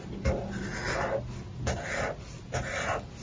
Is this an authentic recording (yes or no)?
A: yes